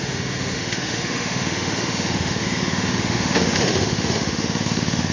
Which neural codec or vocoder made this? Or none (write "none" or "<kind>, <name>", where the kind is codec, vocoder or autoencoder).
autoencoder, DAC-VAE